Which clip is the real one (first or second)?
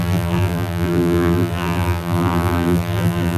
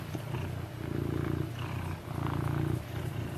second